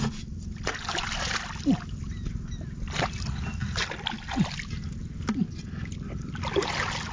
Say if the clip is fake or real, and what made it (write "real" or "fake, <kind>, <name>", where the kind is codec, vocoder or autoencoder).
real